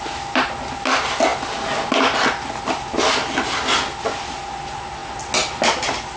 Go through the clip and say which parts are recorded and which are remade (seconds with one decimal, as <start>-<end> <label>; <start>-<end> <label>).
0.0-6.2 recorded